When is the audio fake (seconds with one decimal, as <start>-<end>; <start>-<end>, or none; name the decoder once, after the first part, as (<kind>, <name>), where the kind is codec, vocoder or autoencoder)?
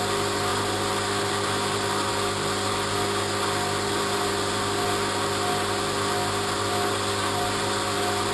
none